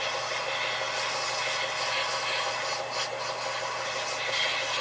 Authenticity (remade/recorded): recorded